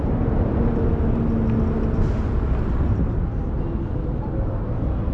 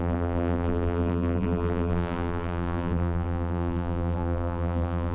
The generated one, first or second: second